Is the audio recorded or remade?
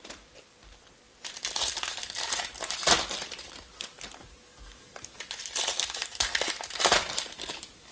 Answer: remade